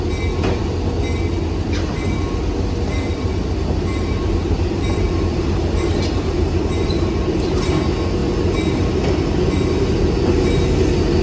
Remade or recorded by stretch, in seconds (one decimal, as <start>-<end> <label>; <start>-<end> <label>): 0.0-3.1 recorded; 3.1-7.7 remade; 7.7-11.2 recorded